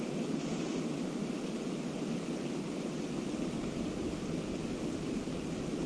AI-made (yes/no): no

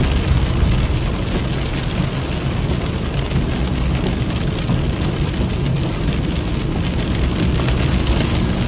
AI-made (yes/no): no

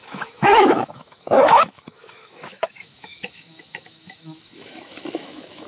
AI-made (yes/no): yes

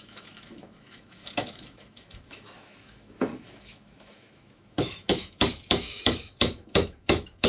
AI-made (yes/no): yes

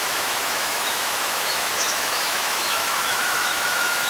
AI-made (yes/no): yes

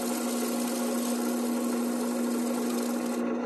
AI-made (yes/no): no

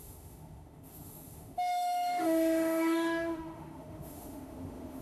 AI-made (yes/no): yes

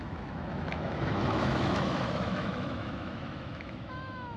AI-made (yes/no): yes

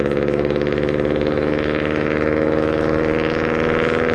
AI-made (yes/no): yes